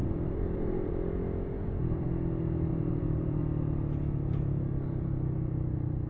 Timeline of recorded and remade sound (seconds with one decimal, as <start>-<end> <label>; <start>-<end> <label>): 0.0-0.9 remade; 0.9-2.7 recorded; 2.7-3.4 remade; 3.4-6.1 recorded